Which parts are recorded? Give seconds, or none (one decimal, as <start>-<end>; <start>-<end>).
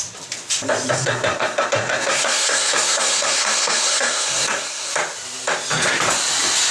0.0-0.9; 4.9-6.7